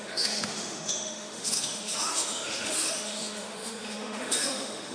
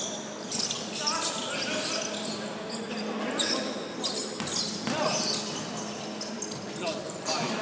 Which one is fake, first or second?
first